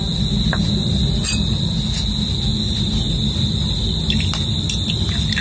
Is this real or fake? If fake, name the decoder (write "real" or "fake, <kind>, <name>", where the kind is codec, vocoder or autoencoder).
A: real